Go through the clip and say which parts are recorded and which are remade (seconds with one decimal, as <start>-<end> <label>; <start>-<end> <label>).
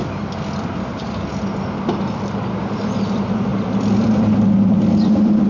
0.0-1.3 remade; 1.3-2.9 recorded; 2.9-5.5 remade